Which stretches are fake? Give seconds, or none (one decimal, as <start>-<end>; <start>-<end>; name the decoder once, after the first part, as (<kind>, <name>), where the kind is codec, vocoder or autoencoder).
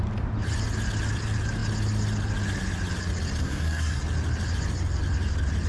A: 3.4-4.0 (codec, SNAC)